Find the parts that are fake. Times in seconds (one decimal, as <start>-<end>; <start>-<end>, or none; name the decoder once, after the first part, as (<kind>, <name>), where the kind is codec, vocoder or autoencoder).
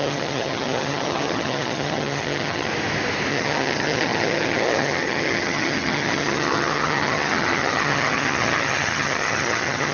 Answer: 0.0-2.7 (vocoder, HiFi-GAN); 3.3-9.9